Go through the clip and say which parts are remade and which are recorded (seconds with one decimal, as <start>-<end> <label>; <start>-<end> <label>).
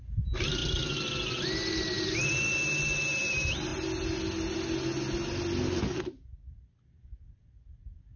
0.0-8.2 recorded